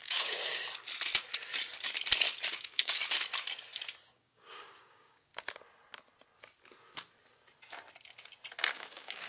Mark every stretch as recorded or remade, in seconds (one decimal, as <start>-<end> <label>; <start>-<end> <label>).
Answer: 0.0-0.5 remade; 0.5-2.5 recorded; 2.5-3.0 remade; 3.0-4.1 recorded; 4.1-5.3 remade; 5.3-8.7 recorded; 8.7-9.3 remade